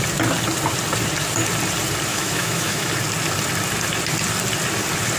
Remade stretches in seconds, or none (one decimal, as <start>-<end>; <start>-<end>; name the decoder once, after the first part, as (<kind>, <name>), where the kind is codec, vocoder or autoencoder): 2.1-2.9 (autoencoder, DAC-VAE)